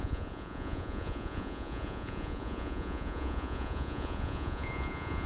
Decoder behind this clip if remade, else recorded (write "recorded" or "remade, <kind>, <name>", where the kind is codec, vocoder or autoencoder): remade, vocoder, Vocos